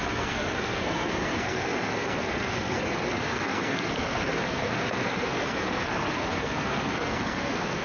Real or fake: fake